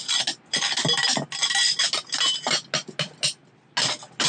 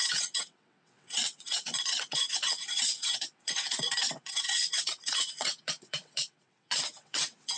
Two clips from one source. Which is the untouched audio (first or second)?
first